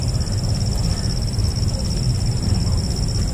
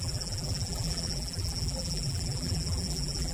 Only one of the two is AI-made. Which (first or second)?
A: second